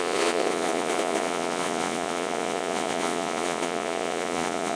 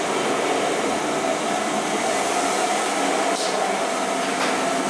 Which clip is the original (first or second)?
second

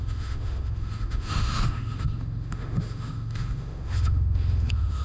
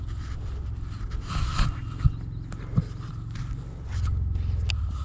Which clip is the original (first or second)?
second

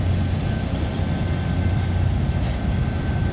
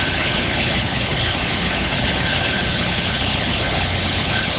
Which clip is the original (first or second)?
first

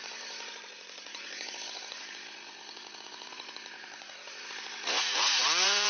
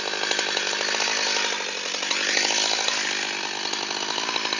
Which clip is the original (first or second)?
second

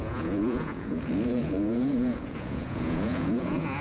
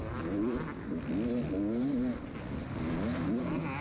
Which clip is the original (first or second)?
second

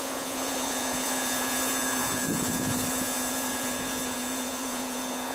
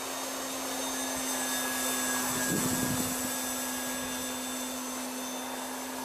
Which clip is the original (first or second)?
second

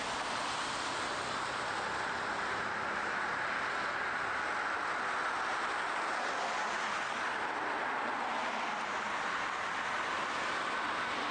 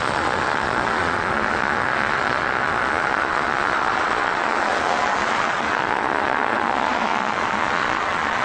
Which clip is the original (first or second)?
first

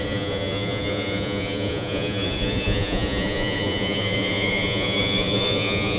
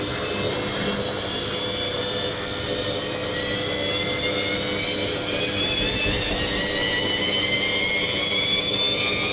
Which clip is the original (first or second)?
second